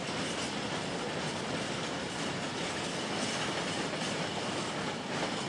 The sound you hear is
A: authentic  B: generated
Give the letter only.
A